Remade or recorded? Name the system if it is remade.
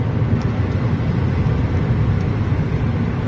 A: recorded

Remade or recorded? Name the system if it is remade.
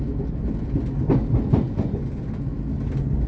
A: recorded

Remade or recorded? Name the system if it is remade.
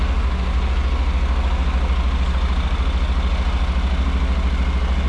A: recorded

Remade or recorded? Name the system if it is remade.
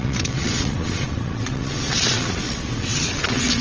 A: remade, vocoder, WaveNeXt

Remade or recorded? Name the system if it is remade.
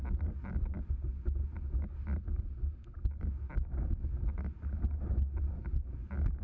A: recorded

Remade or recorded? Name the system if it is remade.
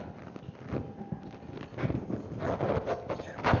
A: recorded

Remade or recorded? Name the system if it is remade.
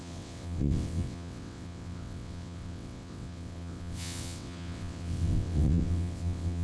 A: remade, vocoder, WaveNeXt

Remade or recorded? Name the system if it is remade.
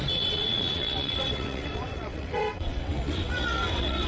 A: remade, vocoder, WaveNeXt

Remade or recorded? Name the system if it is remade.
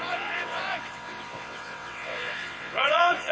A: remade, vocoder, WaveNeXt